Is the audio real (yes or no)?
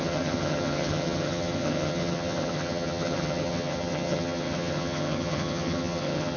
no